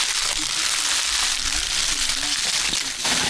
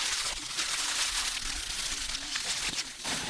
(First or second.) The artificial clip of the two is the second